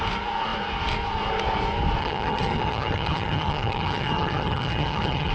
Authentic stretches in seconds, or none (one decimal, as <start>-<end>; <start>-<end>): 0.0-2.0